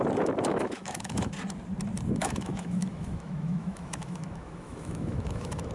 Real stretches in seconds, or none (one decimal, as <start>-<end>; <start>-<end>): 0.0-0.5; 1.3-2.2